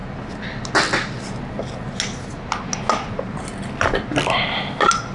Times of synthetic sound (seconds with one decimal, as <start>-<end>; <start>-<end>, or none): none